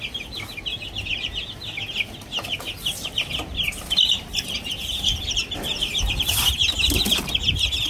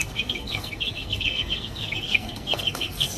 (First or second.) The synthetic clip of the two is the second